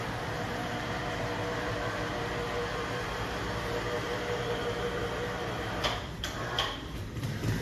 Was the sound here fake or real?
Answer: fake